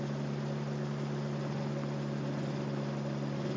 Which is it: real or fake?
real